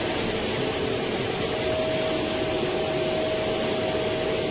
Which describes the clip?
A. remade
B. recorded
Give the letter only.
B